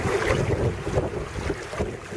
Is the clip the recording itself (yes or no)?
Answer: yes